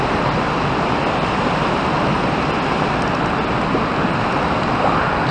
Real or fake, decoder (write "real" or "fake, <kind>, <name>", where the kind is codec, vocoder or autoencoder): real